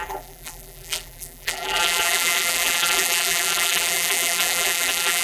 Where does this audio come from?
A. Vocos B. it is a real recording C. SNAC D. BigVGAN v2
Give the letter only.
D